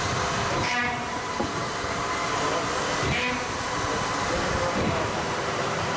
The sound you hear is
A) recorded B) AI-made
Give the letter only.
B